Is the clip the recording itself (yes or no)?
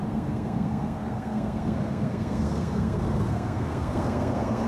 no